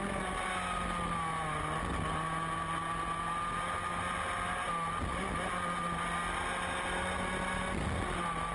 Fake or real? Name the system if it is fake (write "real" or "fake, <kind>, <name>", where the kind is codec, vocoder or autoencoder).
real